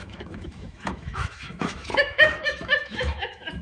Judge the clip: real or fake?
fake